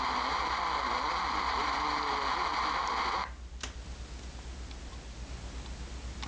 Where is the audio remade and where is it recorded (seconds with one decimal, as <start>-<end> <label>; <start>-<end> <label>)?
0.0-1.6 recorded; 1.6-2.1 remade; 2.1-6.3 recorded